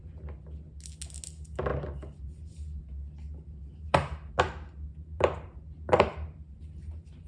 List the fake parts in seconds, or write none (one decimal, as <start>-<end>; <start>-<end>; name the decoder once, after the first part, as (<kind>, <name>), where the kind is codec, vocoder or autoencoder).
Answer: 1.7-4.3 (vocoder, BigVGAN v2); 4.9-7.3